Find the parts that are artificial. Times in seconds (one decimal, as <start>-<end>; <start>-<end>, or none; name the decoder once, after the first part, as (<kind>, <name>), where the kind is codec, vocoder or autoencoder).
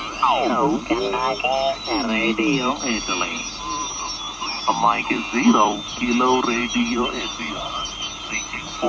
none